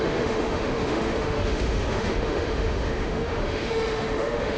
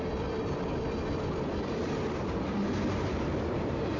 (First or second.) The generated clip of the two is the first